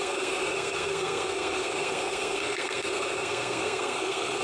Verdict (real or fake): fake